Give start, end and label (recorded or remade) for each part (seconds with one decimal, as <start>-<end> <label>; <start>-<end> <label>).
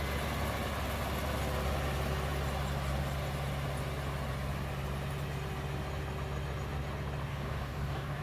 0.0-7.3 recorded; 7.3-8.2 remade